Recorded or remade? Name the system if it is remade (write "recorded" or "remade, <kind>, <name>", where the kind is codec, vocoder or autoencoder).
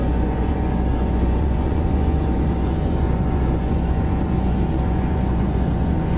remade, vocoder, Vocos